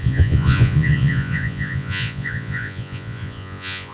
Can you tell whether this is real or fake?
fake